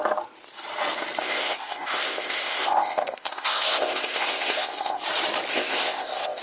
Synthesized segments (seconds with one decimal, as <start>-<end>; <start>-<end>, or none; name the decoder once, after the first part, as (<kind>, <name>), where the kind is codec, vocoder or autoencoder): 1.2-5.0 (codec, ZipCodec); 5.5-6.4